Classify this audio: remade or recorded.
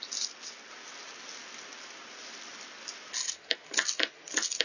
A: recorded